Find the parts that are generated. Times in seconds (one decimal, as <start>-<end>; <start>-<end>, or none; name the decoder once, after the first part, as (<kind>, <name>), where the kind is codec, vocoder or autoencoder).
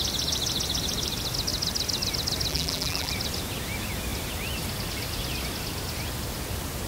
2.5-3.1 (vocoder, BigVGAN v2)